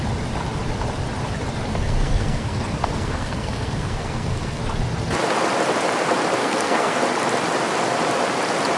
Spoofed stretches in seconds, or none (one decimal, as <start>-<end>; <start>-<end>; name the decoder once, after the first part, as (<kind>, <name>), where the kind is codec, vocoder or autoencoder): 1.7-4.6 (codec, SNAC); 6.4-7.0